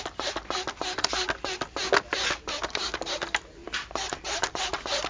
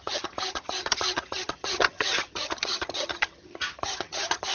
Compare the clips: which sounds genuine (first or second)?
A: first